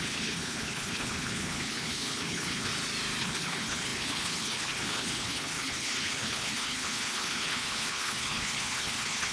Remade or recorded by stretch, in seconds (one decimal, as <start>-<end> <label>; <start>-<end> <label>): 0.0-2.7 remade; 2.7-3.2 recorded; 3.2-9.3 remade